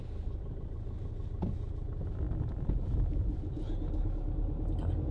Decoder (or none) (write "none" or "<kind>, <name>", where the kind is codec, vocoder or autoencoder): none